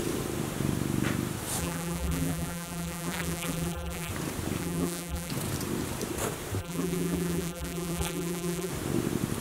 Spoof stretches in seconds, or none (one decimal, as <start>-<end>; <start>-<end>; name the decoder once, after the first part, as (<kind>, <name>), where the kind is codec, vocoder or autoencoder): 1.6-4.1 (vocoder, BigVGAN v2); 4.6-5.3; 6.6-8.7